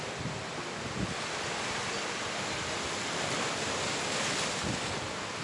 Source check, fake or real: real